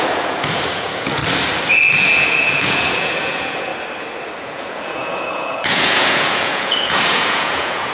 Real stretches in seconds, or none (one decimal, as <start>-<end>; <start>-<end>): 1.2-1.9; 3.7-4.4